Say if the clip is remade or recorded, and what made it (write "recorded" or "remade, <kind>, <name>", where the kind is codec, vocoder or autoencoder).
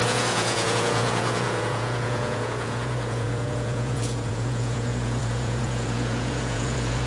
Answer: remade, vocoder, Vocos